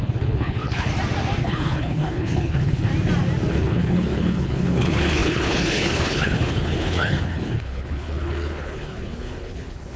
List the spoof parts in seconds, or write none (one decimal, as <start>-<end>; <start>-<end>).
0.0-0.9; 1.4-2.9; 3.5-10.0